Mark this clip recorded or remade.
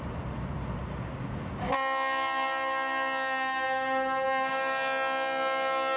recorded